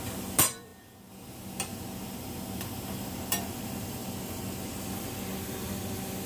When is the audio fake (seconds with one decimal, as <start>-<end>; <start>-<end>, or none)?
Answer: none